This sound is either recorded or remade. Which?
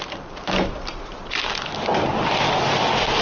recorded